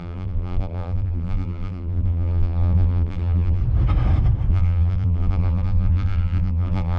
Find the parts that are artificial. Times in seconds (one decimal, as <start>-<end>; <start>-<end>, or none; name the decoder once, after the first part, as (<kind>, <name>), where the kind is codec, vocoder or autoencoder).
0.0-3.6 (vocoder, BigVGAN v2); 4.5-7.0